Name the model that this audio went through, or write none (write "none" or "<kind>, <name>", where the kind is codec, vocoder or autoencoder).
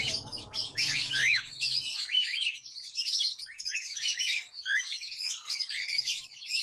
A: codec, DAC